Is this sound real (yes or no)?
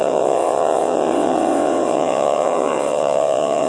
no